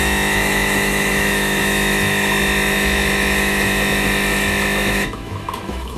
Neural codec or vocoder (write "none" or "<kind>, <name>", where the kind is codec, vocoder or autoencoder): autoencoder, DAC-VAE